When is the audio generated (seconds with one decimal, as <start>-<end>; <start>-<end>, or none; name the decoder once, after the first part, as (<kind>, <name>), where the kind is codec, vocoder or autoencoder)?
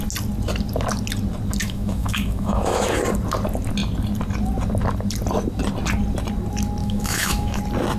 1.6-3.0 (autoencoder, DAC-VAE); 6.8-7.6